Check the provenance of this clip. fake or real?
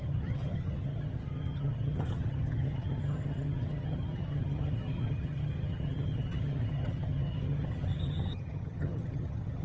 fake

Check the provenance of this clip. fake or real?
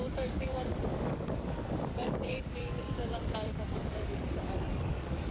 fake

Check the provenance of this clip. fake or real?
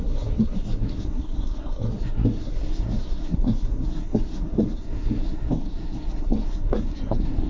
fake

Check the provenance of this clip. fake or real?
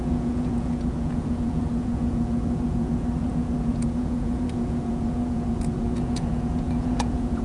fake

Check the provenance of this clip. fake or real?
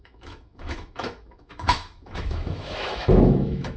fake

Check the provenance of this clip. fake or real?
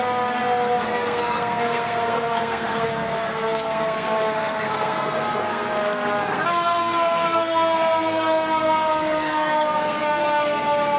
fake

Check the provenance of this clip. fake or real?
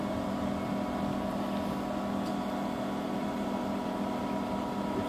real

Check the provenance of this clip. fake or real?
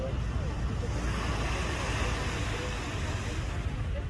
real